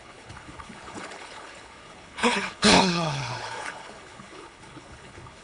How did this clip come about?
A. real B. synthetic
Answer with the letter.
B